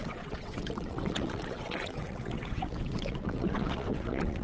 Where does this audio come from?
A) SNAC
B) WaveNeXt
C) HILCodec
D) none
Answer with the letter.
B